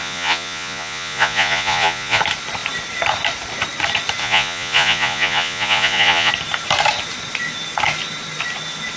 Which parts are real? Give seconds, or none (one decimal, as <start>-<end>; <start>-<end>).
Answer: 2.2-4.2; 6.3-9.0